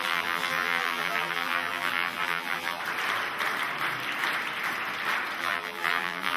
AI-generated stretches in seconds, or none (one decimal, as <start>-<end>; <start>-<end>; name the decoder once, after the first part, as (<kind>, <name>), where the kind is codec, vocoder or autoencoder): 0.0-2.8 (vocoder, BigVGAN v2); 5.4-6.4